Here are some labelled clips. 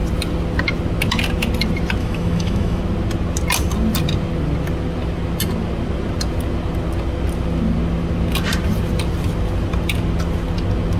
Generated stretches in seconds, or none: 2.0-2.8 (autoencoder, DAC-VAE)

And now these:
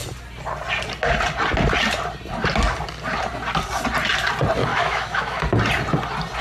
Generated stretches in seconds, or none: 4.7-5.4 (autoencoder, DAC-VAE)